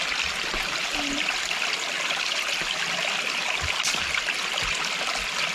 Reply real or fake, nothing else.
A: real